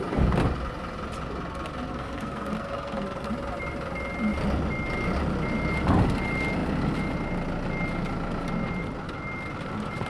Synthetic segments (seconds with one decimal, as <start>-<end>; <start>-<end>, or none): 1.9-3.3